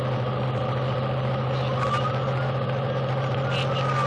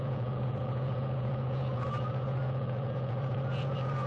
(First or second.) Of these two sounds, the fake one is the second